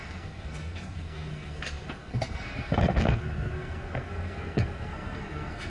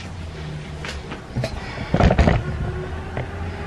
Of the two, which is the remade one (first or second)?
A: first